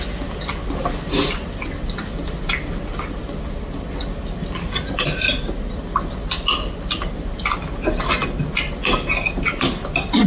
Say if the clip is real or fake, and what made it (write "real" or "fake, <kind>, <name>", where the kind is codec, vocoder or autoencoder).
real